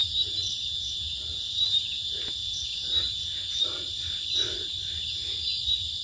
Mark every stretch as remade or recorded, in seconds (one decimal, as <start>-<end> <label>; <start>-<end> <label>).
0.0-3.6 remade; 3.6-6.0 recorded